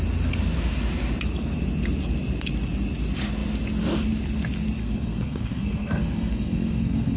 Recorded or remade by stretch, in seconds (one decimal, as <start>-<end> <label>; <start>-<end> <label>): 0.0-4.8 recorded; 4.8-7.2 remade